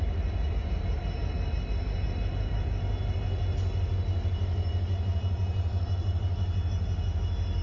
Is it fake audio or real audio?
real